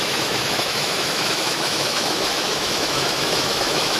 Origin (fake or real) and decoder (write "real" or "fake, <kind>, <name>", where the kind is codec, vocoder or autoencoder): fake, autoencoder, DAC-VAE